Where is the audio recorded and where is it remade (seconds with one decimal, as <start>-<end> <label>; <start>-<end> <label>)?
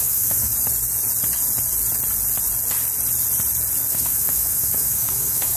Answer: 0.0-0.5 remade; 0.5-3.9 recorded; 3.9-5.6 remade